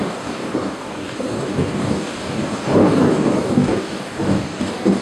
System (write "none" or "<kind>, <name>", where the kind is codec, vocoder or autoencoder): codec, DAC